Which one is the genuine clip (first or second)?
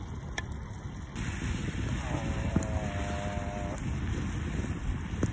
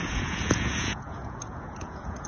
first